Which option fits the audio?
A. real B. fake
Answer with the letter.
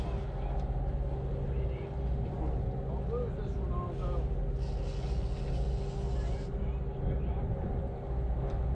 A